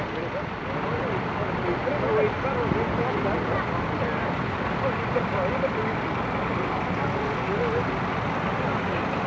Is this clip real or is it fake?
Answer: real